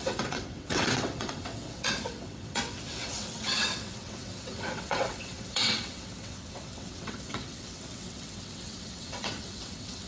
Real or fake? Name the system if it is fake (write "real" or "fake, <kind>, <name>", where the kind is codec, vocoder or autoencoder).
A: fake, vocoder, WaveNeXt